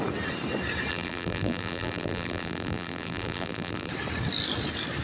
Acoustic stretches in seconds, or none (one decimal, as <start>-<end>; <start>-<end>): 0.0-0.9; 3.9-5.0